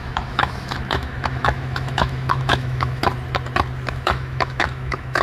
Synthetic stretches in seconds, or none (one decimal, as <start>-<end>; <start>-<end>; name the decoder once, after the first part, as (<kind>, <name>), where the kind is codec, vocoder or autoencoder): 0.0-3.0 (autoencoder, DAC-VAE); 3.9-5.2